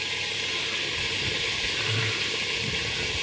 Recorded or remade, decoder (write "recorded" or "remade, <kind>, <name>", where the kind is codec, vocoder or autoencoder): remade, vocoder, BigVGAN v2